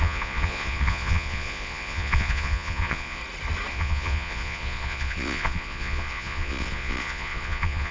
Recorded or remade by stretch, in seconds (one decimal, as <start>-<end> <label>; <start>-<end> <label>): 0.0-3.2 remade; 3.2-3.7 recorded; 3.7-7.9 remade